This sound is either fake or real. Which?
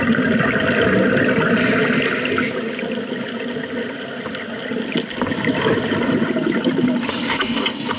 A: real